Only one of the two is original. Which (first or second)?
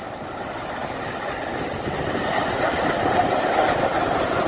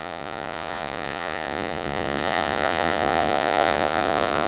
first